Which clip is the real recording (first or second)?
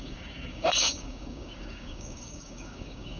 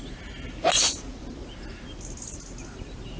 second